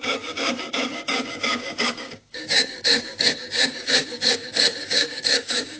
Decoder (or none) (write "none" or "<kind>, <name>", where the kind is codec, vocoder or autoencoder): codec, DAC